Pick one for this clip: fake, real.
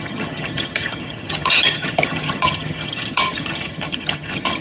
fake